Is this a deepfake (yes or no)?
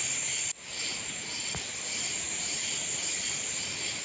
no